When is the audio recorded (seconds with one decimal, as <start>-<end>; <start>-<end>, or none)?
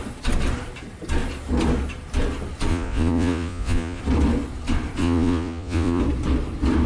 0.0-2.7; 4.0-5.0; 6.0-6.9